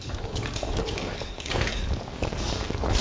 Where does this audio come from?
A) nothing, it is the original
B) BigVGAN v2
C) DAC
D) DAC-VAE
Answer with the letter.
C